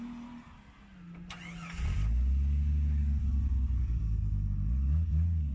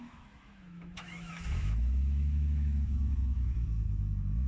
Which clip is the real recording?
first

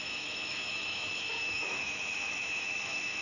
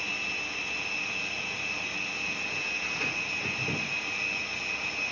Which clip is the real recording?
second